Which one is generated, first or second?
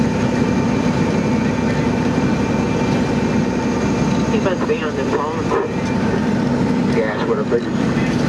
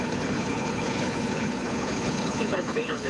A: second